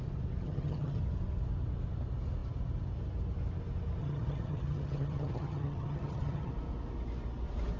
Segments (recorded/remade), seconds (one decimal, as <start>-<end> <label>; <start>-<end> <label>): 0.0-0.4 recorded; 0.4-1.0 remade; 1.0-4.0 recorded; 4.0-6.5 remade; 6.5-7.8 recorded